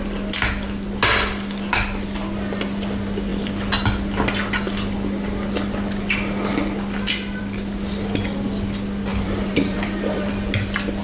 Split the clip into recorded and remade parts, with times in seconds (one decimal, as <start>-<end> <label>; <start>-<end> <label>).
0.0-9.1 recorded; 9.1-10.3 remade; 10.3-11.0 recorded